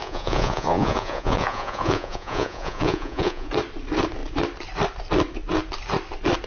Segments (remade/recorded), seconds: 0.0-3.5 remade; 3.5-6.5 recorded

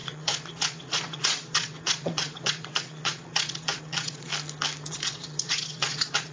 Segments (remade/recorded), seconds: 0.0-4.3 remade; 4.3-4.9 recorded; 4.9-6.3 remade

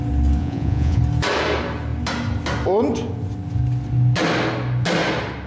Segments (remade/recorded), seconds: 0.0-0.4 recorded; 0.4-1.0 remade; 1.0-5.5 recorded

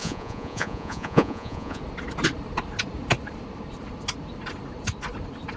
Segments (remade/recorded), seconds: 0.0-1.8 remade; 1.8-5.6 recorded

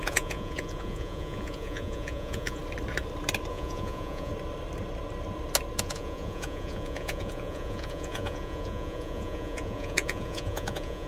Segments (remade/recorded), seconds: 0.0-2.6 remade; 2.6-3.5 recorded; 3.5-4.3 remade; 4.3-5.8 recorded; 5.8-11.1 remade

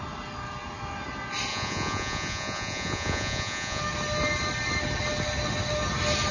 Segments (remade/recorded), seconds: 0.0-1.5 recorded; 1.5-3.8 remade; 3.8-6.3 recorded